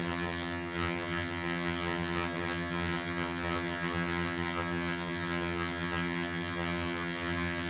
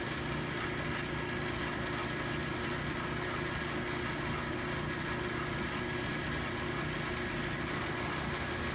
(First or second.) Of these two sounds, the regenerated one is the first